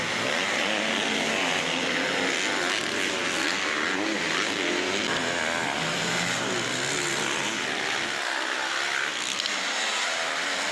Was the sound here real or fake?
real